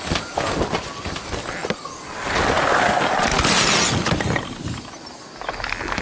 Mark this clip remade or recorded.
recorded